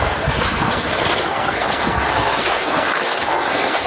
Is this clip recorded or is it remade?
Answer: remade